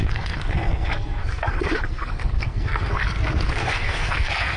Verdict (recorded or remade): remade